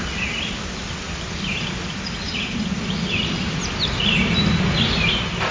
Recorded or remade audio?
recorded